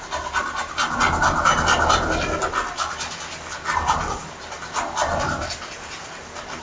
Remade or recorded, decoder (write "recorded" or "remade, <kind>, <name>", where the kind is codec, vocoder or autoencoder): recorded